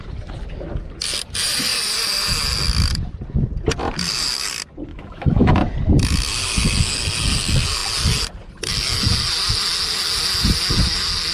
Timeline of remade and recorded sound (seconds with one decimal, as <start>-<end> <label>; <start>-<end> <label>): 0.0-4.9 recorded; 4.9-5.5 remade; 5.5-11.3 recorded